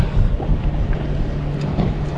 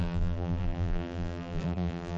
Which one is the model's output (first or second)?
second